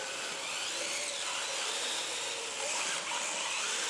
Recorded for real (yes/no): yes